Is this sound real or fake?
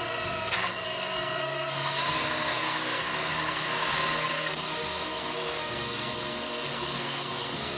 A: fake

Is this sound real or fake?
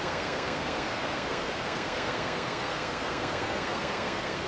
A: fake